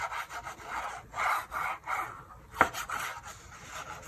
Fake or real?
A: real